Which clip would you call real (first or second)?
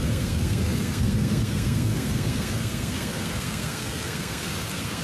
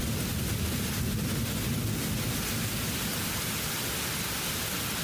second